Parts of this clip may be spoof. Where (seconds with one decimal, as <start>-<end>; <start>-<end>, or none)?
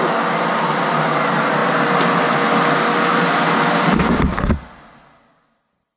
none